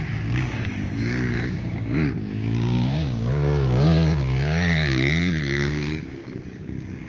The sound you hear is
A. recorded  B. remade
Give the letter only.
B